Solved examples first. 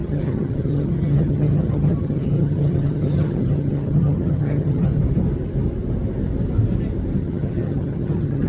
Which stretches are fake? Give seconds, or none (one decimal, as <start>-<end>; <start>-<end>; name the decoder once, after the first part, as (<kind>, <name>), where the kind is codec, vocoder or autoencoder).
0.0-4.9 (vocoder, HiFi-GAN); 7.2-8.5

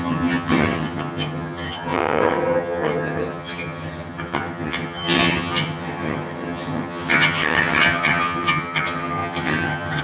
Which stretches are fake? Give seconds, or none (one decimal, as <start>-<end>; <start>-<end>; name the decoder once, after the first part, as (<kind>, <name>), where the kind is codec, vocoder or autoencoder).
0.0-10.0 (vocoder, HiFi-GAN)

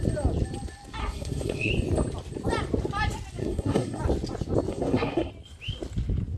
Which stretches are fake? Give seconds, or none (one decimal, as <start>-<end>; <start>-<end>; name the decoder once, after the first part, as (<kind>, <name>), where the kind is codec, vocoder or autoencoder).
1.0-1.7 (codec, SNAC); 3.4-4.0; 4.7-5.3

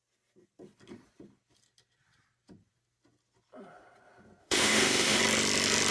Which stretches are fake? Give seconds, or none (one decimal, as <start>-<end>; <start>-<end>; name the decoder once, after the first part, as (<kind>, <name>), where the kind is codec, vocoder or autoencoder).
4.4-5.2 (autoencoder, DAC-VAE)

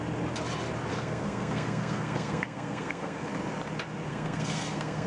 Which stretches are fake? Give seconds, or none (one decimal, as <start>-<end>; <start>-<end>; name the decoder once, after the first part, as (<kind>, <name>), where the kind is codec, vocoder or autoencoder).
0.9-3.3 (codec, SNAC); 4.1-5.1